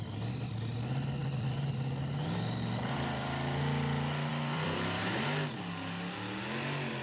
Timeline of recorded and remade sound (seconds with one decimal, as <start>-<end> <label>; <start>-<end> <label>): 0.0-1.2 recorded; 1.2-1.7 remade; 1.7-4.3 recorded; 4.3-5.2 remade; 5.2-7.0 recorded